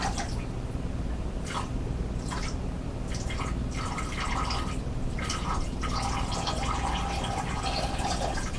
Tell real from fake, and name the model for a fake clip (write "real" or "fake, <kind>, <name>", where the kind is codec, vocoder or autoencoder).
real